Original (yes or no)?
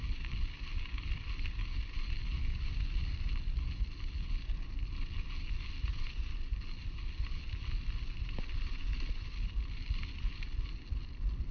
yes